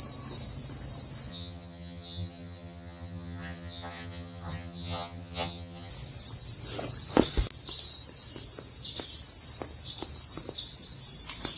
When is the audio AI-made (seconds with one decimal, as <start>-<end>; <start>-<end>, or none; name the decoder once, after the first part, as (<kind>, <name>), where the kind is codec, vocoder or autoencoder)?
1.3-5.9 (vocoder, HiFi-GAN)